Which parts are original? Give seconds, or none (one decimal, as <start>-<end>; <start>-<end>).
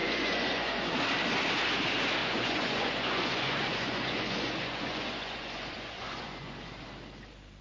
0.9-2.2; 6.8-7.6